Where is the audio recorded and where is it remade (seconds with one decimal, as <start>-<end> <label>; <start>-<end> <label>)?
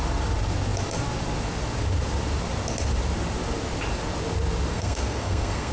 0.0-4.7 recorded; 4.7-5.7 remade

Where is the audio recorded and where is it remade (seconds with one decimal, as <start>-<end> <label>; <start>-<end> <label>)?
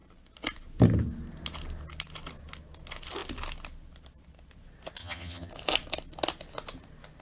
0.0-5.0 recorded; 5.0-5.5 remade; 5.5-7.2 recorded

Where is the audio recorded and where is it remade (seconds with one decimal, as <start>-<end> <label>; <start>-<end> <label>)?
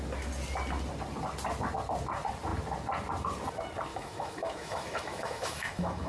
0.0-3.9 recorded; 3.9-6.1 remade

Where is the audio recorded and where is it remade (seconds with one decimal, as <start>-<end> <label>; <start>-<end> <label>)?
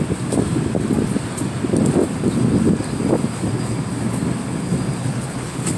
0.0-5.0 recorded; 5.0-5.8 remade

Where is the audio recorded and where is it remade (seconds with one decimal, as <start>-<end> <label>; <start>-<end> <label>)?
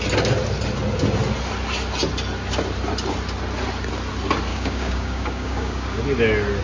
0.0-4.5 recorded; 4.5-6.0 remade; 6.0-6.6 recorded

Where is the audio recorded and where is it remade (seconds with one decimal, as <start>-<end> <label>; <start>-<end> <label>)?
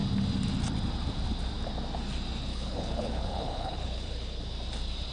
0.0-2.5 recorded; 2.5-4.4 remade; 4.4-5.1 recorded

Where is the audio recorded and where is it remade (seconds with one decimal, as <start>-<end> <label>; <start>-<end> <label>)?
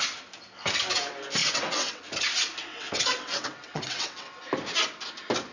0.0-1.4 recorded; 1.4-2.0 remade; 2.0-2.6 recorded; 2.6-4.4 remade; 4.4-5.5 recorded